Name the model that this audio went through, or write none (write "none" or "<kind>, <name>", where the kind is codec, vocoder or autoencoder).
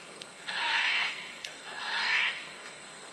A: codec, SNAC